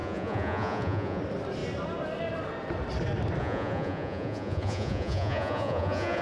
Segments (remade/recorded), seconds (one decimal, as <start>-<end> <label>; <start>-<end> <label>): 0.0-1.2 remade; 1.2-3.4 recorded; 3.4-6.2 remade